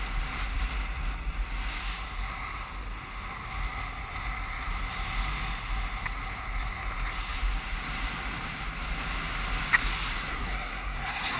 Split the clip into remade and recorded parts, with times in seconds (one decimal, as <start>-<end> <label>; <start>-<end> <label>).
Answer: 0.0-10.3 recorded; 10.3-11.4 remade